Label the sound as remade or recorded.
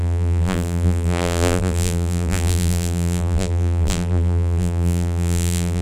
remade